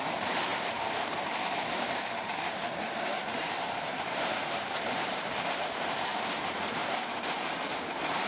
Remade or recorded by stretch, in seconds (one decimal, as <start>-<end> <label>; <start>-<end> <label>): 0.0-8.3 remade